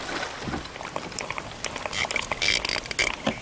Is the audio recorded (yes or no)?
yes